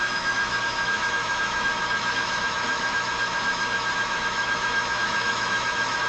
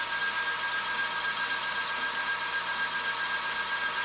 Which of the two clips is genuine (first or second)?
second